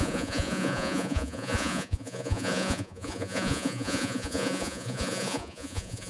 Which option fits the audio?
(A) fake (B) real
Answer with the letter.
A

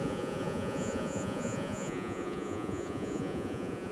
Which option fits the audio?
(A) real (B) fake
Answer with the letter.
B